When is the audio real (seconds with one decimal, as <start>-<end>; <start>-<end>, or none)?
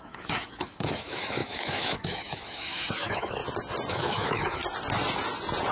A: 3.4-3.9; 4.6-5.7